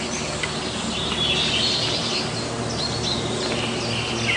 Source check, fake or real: real